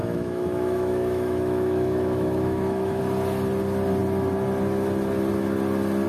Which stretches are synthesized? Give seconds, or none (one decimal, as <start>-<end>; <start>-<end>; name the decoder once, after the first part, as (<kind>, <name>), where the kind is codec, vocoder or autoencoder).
0.0-3.0 (autoencoder, DAC-VAE)